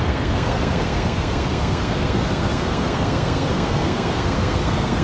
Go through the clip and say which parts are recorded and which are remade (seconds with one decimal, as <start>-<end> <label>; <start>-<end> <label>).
0.0-5.0 remade